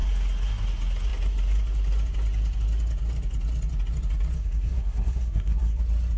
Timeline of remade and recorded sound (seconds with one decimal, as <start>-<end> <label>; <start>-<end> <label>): 0.0-4.4 recorded; 4.4-5.8 remade; 5.8-6.2 recorded